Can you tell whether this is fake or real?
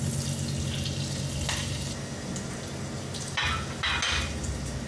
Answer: real